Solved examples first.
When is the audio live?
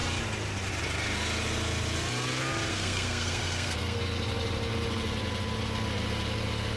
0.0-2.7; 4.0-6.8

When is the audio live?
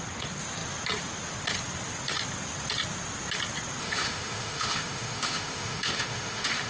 0.0-3.8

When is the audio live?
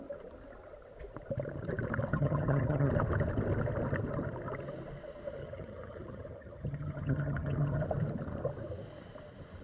0.0-2.1; 2.9-5.4; 7.8-9.6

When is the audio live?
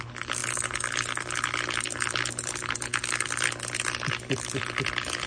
0.0-5.3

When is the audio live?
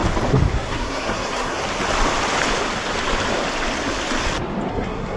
0.0-0.5; 1.6-4.7